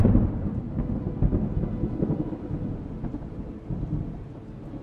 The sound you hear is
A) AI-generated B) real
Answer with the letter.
B